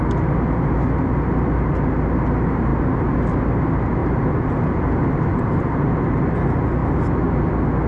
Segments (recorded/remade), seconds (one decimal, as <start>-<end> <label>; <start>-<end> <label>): 0.0-5.3 recorded; 5.3-5.9 remade; 5.9-7.9 recorded